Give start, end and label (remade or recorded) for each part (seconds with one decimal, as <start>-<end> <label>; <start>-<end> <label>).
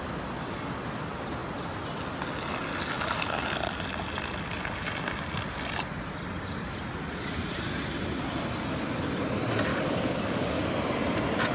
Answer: 0.0-9.7 recorded; 9.7-10.6 remade; 10.6-11.5 recorded